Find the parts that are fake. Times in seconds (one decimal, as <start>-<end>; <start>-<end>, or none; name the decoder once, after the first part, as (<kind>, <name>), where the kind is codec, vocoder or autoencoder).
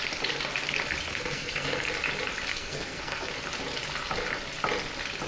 1.1-1.9 (codec, SNAC); 2.5-3.3